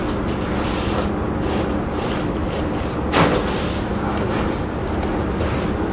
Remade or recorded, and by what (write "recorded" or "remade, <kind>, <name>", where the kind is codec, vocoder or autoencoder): recorded